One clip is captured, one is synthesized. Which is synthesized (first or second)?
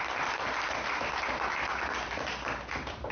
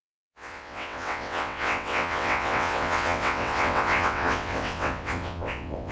second